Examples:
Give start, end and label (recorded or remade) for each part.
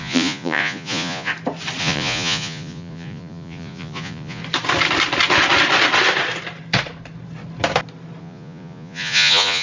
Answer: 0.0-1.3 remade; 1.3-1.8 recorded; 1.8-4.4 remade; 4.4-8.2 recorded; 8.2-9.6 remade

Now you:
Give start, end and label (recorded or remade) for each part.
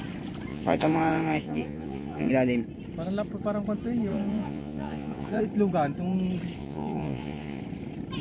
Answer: 0.0-0.5 recorded; 0.5-2.3 remade; 2.3-4.1 recorded; 4.1-5.4 remade; 5.4-6.6 recorded; 6.6-7.6 remade; 7.6-8.2 recorded